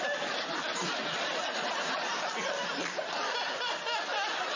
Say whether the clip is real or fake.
real